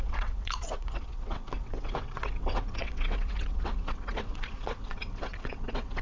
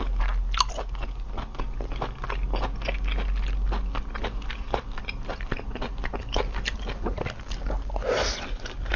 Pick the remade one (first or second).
first